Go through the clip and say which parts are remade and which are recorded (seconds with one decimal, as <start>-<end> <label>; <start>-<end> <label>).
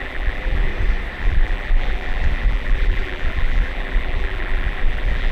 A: 0.0-0.7 remade; 0.7-1.2 recorded; 1.2-5.3 remade